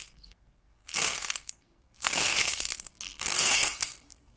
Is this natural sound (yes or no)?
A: no